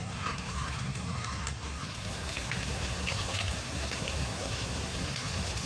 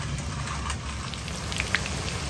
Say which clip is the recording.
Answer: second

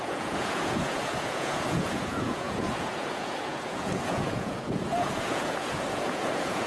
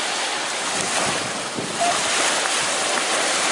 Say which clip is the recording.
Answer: second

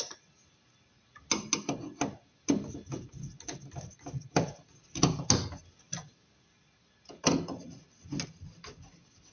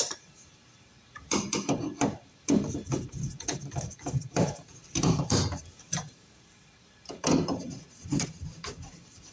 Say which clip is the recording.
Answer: first